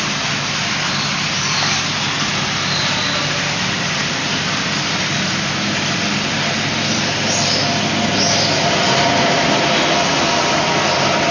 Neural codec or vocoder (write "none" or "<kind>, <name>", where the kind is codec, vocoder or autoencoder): none